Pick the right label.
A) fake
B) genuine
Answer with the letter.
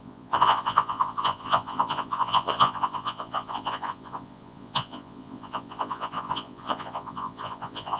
A